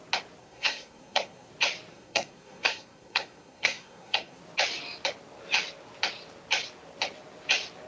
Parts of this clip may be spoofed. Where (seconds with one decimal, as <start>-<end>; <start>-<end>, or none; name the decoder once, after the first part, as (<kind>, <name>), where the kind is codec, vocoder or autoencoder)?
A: 0.4-1.5 (codec, SNAC); 1.9-4.4